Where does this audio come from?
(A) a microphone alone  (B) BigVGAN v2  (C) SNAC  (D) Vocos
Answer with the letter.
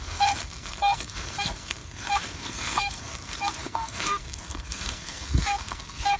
C